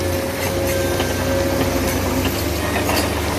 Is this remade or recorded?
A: recorded